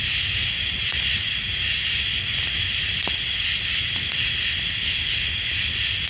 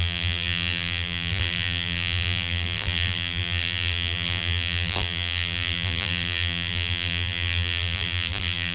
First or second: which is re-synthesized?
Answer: second